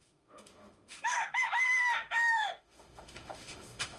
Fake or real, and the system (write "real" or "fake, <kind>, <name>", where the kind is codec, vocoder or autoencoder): fake, autoencoder, DAC-VAE